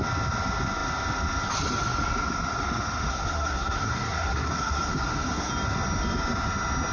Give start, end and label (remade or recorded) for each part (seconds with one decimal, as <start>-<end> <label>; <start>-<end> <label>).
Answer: 0.0-3.1 recorded; 3.1-5.5 remade; 5.5-6.9 recorded

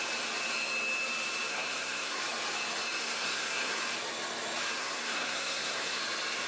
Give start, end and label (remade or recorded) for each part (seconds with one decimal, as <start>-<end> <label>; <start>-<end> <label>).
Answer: 0.0-1.5 recorded; 1.5-2.2 remade; 2.2-3.0 recorded; 3.0-3.8 remade; 3.8-4.8 recorded; 4.8-6.0 remade; 6.0-6.5 recorded

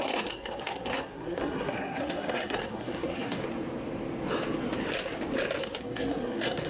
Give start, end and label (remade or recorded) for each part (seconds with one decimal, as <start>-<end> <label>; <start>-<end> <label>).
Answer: 0.0-3.4 remade; 3.4-5.6 recorded; 5.6-6.7 remade

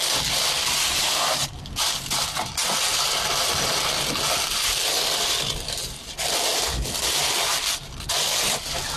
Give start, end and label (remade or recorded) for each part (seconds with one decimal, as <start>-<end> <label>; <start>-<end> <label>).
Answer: 0.0-9.0 recorded

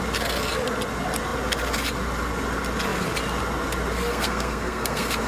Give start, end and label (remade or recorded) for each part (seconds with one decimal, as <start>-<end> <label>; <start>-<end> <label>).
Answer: 0.0-4.1 recorded; 4.1-5.3 remade